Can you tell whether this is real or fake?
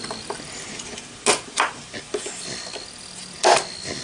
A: real